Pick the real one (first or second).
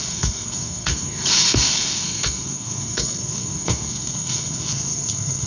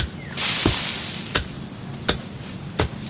second